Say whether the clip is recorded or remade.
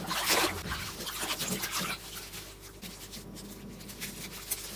recorded